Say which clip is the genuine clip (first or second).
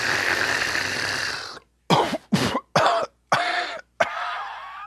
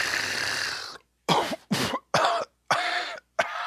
first